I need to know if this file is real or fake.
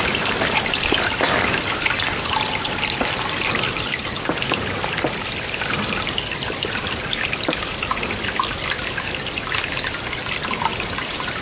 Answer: fake